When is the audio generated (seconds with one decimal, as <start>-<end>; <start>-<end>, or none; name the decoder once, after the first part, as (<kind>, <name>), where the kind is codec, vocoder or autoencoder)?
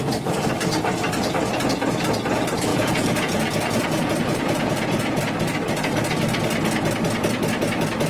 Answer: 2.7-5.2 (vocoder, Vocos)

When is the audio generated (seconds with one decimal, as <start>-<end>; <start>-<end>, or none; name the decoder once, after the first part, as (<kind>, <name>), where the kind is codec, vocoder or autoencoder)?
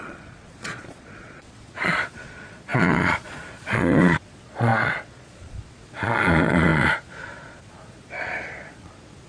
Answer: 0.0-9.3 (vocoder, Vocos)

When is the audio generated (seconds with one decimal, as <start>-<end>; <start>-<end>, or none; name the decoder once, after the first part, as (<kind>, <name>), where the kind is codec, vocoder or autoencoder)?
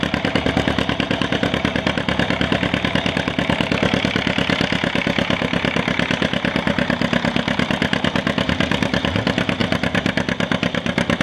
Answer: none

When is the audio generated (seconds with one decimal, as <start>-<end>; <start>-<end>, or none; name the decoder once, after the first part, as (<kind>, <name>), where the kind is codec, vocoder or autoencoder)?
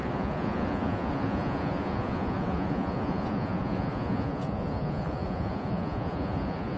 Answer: 0.0-6.8 (vocoder, Vocos)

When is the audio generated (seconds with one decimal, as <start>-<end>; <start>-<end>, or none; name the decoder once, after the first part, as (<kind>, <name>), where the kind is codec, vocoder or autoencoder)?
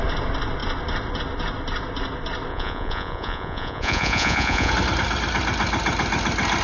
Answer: 2.5-4.7 (vocoder, Vocos)